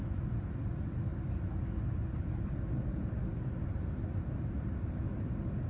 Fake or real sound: real